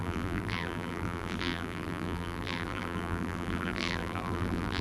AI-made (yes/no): yes